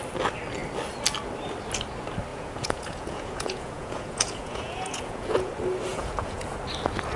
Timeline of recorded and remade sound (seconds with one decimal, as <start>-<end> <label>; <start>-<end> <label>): 0.0-2.3 recorded; 2.3-5.5 remade; 5.5-5.9 recorded; 5.9-6.4 remade; 6.4-7.2 recorded